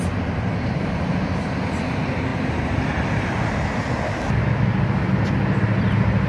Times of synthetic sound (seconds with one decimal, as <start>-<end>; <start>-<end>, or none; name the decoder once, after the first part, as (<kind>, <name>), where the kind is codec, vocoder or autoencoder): none